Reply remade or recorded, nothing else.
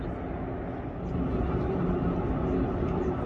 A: recorded